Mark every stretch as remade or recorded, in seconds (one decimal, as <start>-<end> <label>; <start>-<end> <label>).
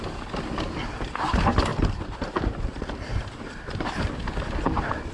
0.0-1.7 recorded; 1.7-2.6 remade; 2.6-3.1 recorded; 3.1-4.1 remade; 4.1-5.1 recorded